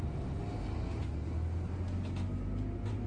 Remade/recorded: recorded